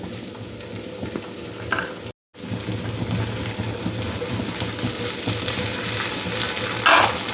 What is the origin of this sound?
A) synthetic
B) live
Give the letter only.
B